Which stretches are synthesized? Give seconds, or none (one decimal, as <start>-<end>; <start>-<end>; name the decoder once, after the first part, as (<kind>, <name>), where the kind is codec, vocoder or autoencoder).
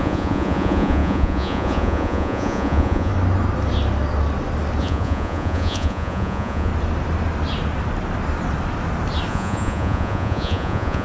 0.0-3.1 (vocoder, Vocos); 4.8-6.7; 9.3-11.0